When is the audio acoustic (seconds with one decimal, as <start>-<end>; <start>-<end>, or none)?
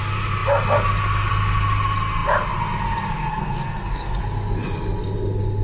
0.0-3.3; 4.2-5.6